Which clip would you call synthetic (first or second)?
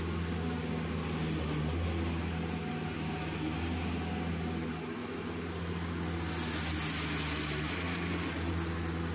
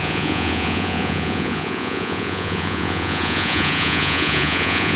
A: second